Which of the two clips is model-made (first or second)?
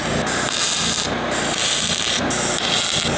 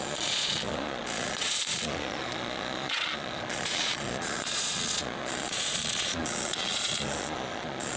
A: second